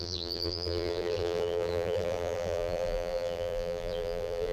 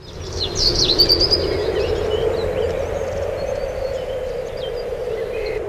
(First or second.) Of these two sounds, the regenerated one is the first